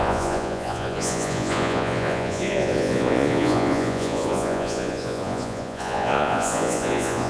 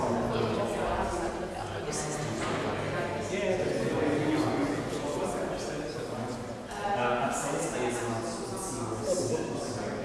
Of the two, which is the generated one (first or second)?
first